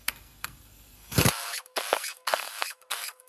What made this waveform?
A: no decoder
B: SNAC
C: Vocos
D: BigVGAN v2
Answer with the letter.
B